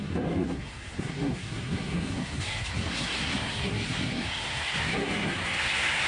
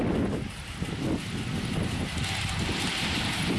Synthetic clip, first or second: first